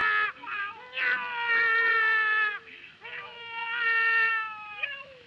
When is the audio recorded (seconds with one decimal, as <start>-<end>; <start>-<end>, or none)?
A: 0.0-3.2; 3.6-4.3